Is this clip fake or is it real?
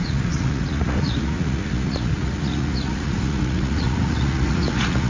fake